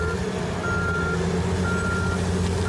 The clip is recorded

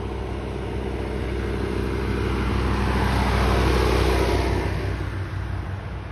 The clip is recorded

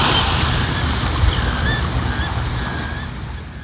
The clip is recorded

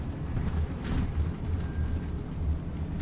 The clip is remade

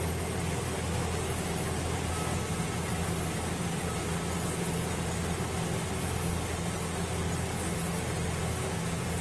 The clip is recorded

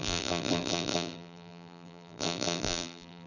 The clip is remade